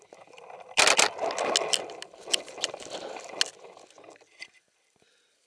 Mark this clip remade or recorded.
recorded